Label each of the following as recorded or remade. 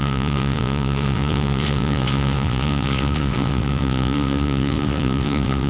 remade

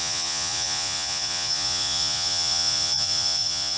remade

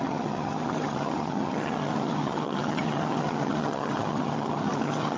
remade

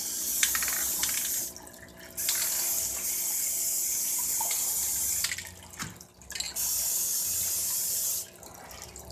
recorded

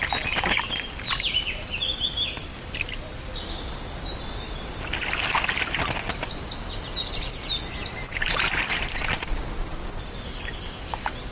recorded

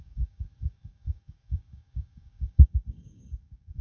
remade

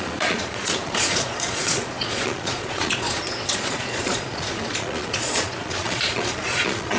remade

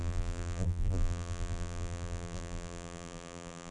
remade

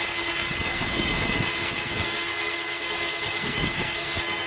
remade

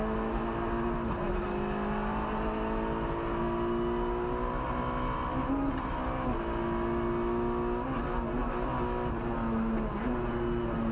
recorded